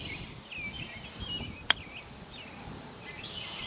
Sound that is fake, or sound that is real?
real